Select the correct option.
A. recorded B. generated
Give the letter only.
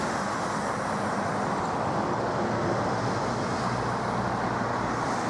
A